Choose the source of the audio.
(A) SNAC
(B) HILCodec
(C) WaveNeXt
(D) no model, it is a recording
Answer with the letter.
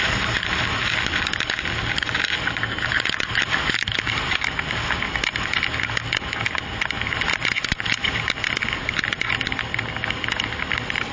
D